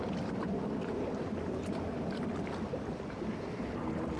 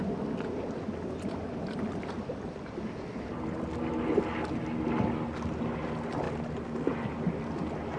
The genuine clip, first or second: second